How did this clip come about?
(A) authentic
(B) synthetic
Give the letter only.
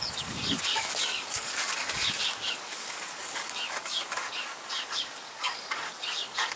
B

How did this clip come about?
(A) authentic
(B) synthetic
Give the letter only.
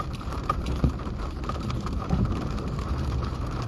B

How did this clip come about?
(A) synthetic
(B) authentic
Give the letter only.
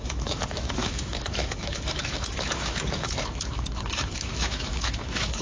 A